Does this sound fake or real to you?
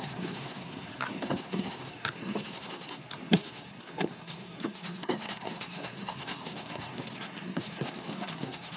fake